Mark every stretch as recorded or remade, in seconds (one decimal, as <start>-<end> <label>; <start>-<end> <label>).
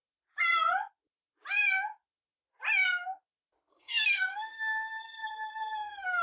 0.0-3.7 recorded; 3.7-6.2 remade